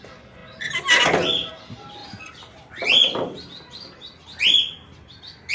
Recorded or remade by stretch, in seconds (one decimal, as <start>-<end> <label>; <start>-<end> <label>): 0.0-5.5 recorded